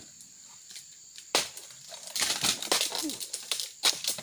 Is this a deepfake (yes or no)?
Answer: yes